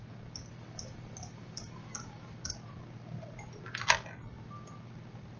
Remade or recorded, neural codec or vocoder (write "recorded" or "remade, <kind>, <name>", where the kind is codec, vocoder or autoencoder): recorded